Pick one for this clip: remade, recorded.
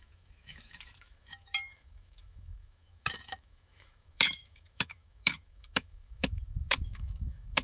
remade